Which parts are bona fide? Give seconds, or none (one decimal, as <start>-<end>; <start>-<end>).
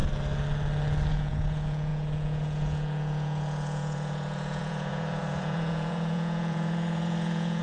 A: 0.0-1.1